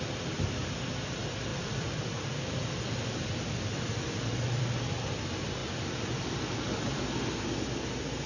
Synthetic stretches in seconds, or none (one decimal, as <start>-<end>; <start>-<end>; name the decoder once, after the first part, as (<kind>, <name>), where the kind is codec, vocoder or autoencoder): 1.5-4.6 (vocoder, BigVGAN v2); 5.6-7.0